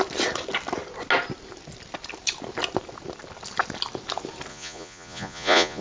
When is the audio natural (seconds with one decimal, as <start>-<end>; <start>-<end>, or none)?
0.0-4.5